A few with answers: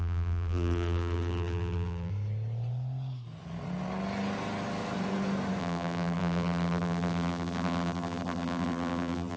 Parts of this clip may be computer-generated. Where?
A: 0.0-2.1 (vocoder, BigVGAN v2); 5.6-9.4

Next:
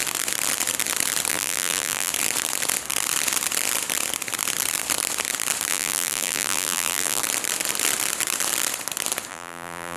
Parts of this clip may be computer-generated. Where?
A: 1.3-2.1 (vocoder, BigVGAN v2); 5.7-7.2; 9.3-10.0

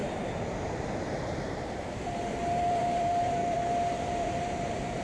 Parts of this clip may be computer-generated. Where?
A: 0.0-3.4 (vocoder, BigVGAN v2); 4.0-5.0

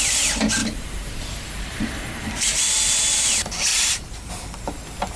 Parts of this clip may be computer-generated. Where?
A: 0.6-2.7 (vocoder, BigVGAN v2); 3.7-4.3

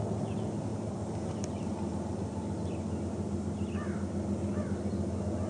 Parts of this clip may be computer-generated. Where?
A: none

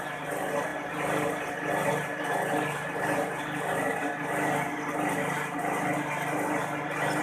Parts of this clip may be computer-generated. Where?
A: none

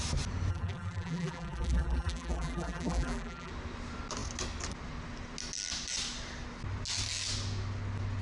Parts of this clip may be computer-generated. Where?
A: 0.5-3.5 (vocoder, BigVGAN v2)

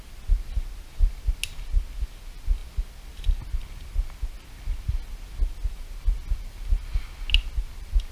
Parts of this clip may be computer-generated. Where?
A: none